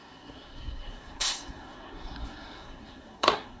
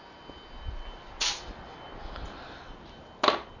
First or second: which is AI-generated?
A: first